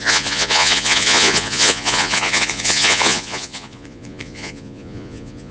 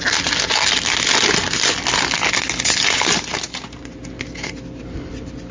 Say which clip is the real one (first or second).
second